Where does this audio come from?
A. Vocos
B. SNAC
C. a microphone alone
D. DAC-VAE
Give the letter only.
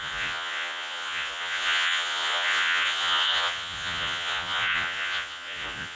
A